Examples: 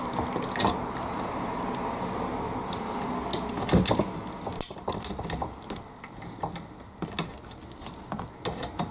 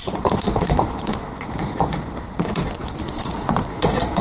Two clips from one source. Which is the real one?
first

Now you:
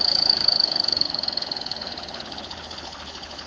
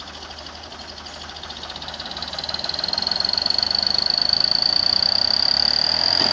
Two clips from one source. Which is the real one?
second